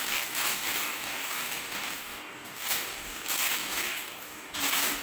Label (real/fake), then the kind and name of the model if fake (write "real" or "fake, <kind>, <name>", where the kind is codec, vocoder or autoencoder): fake, codec, DAC